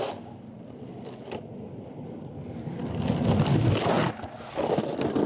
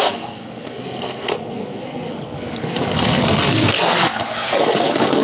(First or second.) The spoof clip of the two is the second